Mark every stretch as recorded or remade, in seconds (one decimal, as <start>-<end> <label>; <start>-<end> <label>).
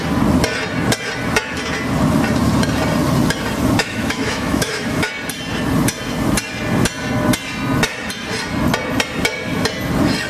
0.0-3.8 recorded; 3.8-5.1 remade; 5.1-10.3 recorded